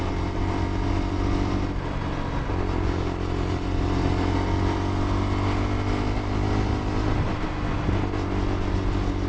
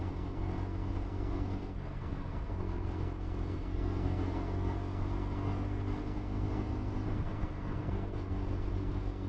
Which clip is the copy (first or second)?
second